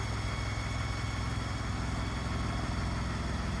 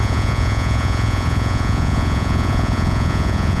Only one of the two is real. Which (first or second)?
first